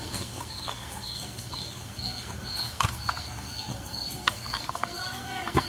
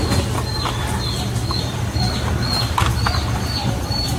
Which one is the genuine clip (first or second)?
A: second